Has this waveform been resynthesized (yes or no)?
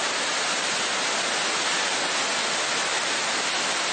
no